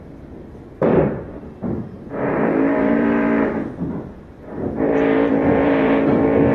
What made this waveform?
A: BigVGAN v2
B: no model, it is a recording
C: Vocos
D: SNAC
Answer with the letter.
A